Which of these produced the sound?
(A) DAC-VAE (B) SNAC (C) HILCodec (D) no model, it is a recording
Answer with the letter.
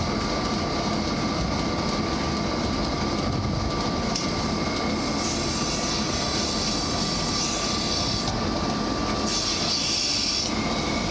D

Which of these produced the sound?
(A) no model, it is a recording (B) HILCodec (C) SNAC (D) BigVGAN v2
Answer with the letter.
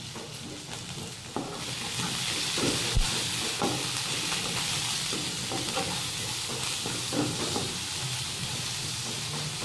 A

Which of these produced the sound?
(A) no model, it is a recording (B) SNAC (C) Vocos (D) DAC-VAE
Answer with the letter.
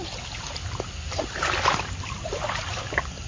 A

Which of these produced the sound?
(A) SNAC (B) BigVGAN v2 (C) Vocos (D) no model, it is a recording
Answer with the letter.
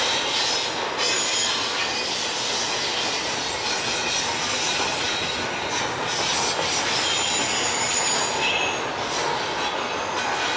D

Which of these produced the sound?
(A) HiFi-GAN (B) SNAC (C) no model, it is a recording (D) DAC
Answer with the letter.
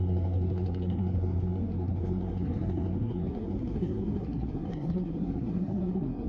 B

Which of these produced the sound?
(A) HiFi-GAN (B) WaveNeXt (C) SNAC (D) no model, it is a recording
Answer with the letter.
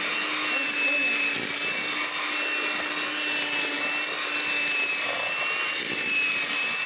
D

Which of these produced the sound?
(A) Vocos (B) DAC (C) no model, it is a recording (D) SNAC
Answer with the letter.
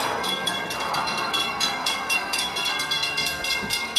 D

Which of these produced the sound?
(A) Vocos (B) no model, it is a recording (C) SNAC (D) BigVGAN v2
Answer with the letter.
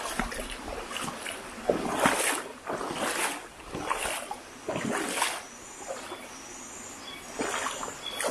B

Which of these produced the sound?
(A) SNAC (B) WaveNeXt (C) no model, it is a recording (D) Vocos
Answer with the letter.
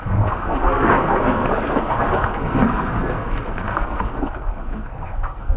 A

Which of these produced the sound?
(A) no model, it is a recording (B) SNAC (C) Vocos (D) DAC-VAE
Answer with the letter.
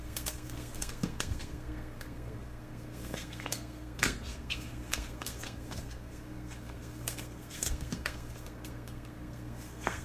B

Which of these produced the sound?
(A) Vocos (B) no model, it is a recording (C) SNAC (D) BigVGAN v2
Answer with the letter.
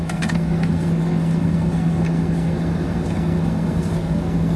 C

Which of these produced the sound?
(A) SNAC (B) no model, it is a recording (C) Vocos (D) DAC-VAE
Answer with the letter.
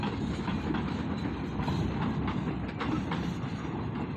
B